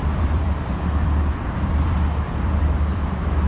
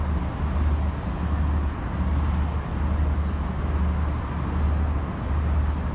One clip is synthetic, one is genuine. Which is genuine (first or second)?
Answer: second